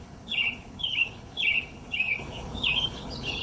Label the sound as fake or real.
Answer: fake